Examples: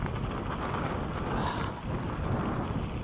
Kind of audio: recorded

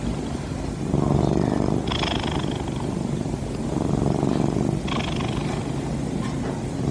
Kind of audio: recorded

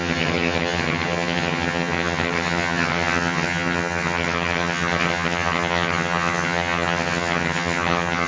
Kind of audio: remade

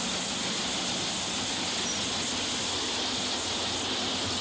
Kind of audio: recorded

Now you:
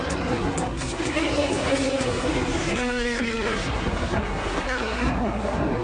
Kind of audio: remade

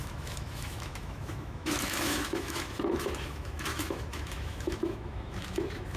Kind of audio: remade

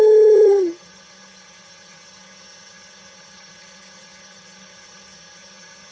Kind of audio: remade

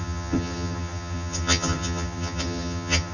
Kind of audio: remade